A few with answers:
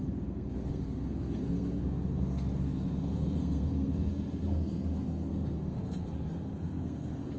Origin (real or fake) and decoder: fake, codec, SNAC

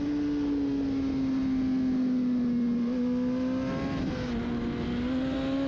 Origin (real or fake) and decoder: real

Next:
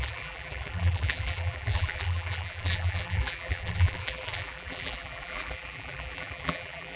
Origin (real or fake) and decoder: fake, vocoder, BigVGAN v2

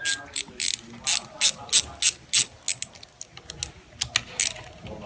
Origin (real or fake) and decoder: real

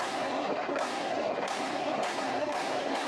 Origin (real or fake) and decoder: fake, codec, SNAC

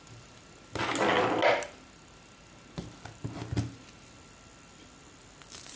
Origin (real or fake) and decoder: real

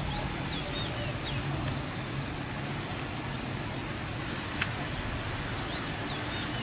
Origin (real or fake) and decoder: real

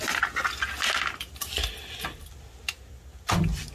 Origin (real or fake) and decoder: real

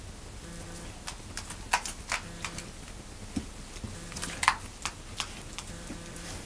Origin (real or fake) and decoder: real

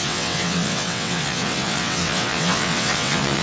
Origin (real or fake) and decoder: fake, vocoder, WaveNeXt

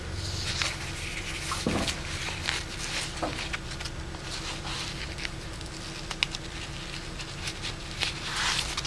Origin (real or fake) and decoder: real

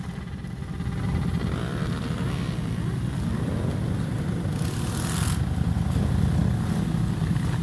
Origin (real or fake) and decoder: real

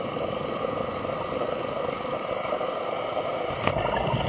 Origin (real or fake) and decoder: real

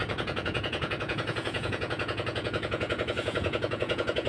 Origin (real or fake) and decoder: fake, vocoder, Vocos